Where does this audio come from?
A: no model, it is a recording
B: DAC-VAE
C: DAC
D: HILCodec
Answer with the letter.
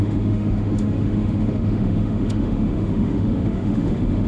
B